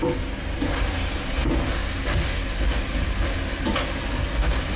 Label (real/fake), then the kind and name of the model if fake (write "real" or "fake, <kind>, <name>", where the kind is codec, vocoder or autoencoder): real